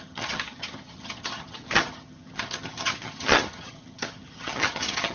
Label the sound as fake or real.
fake